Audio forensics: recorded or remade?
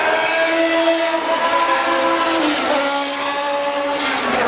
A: recorded